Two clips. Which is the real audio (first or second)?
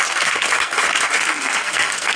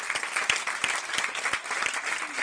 second